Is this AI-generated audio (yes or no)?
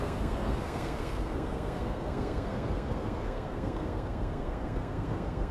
yes